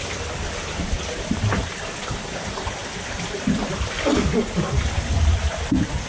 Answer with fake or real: real